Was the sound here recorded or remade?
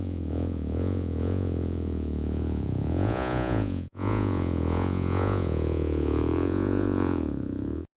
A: remade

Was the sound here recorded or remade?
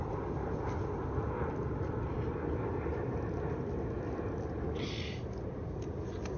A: recorded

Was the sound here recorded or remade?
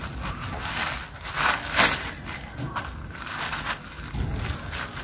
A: recorded